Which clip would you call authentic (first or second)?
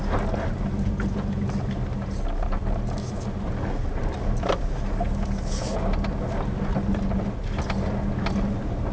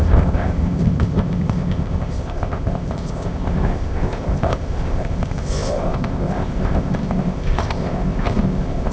first